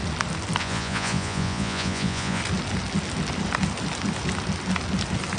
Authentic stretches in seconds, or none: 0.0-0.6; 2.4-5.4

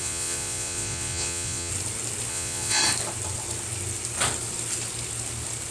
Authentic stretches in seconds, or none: 1.7-2.3; 2.8-5.7

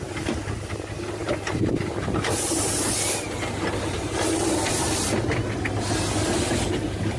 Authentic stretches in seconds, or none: 0.0-7.2

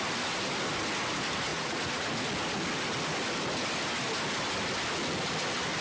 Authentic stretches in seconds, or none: 0.0-1.5; 2.1-5.8

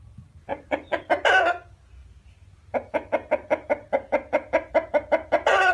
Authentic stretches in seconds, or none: 0.0-0.5; 1.0-5.7

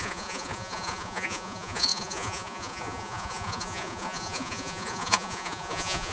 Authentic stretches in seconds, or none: none